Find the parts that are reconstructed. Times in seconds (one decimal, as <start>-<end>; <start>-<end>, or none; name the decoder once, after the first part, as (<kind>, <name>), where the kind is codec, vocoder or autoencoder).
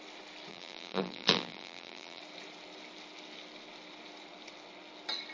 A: 0.5-2.2 (vocoder, BigVGAN v2)